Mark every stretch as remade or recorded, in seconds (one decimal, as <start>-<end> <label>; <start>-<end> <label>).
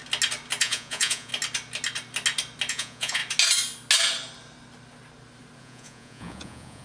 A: 0.0-0.6 recorded; 0.6-1.3 remade; 1.3-2.7 recorded; 2.7-3.2 remade; 3.2-5.6 recorded; 5.6-6.8 remade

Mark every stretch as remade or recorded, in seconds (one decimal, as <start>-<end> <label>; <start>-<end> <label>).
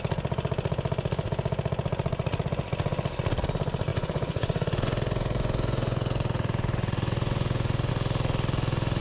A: 0.0-3.9 recorded; 3.9-7.9 remade; 7.9-9.0 recorded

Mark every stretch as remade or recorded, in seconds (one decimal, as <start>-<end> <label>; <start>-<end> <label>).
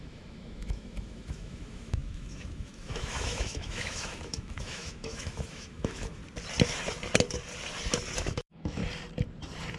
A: 0.0-6.2 remade; 6.2-8.2 recorded; 8.2-8.8 remade; 8.8-9.8 recorded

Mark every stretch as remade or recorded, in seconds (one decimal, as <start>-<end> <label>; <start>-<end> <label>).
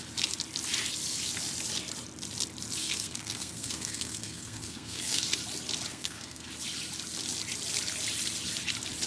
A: 0.0-2.8 recorded; 2.8-5.2 remade; 5.2-5.9 recorded; 5.9-6.5 remade; 6.5-9.1 recorded